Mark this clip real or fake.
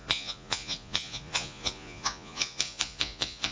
fake